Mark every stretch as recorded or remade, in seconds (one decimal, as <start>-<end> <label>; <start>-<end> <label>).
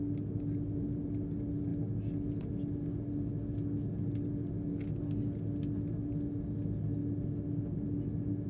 0.0-8.5 recorded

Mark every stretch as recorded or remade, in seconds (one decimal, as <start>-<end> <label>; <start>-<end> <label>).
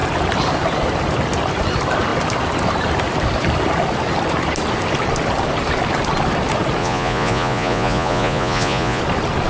0.0-6.8 recorded; 6.8-9.0 remade; 9.0-9.5 recorded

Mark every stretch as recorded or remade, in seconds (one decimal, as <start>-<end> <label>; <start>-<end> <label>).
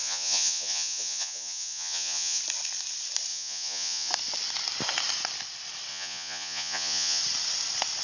0.0-2.4 remade; 2.4-3.3 recorded; 3.3-4.1 remade; 4.1-5.9 recorded; 5.9-7.2 remade; 7.2-8.0 recorded